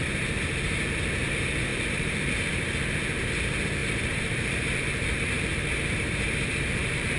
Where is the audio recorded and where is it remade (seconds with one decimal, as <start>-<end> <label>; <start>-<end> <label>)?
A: 0.0-1.7 recorded; 1.7-2.3 remade; 2.3-3.8 recorded; 3.8-7.2 remade